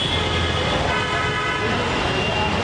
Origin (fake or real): real